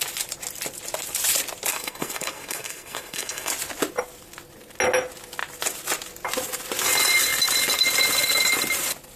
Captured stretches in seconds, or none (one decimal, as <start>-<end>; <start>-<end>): 0.0-1.7; 3.5-9.2